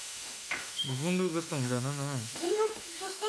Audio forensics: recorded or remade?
remade